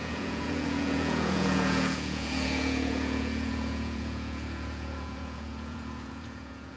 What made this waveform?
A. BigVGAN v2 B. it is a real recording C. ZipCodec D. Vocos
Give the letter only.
D